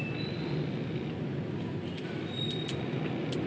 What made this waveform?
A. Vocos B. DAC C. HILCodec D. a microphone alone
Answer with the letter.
D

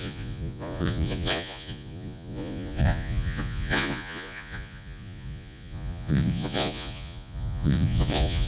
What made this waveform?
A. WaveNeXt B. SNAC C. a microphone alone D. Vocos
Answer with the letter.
D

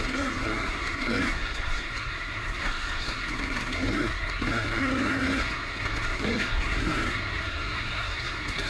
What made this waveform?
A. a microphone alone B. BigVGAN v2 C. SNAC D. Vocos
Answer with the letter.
C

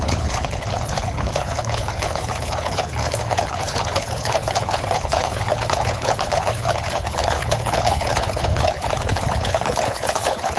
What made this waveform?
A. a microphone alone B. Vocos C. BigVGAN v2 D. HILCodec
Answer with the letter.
D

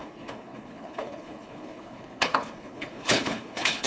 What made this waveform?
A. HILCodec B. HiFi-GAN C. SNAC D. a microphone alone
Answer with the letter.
A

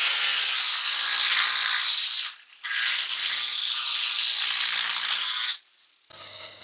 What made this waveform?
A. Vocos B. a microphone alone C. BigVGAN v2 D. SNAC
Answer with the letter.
B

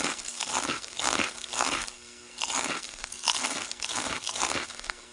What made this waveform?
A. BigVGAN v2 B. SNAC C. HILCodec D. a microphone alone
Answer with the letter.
B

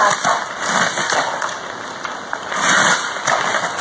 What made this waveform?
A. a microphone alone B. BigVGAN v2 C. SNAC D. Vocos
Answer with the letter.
A